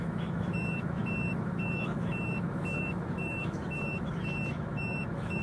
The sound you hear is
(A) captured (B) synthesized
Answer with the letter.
B